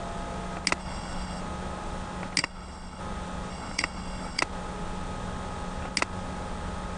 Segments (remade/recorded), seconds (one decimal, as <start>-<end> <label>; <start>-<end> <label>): 0.0-0.8 recorded; 0.8-1.4 remade; 1.4-2.4 recorded; 2.4-3.0 remade; 3.0-3.5 recorded; 3.5-4.4 remade; 4.4-7.0 recorded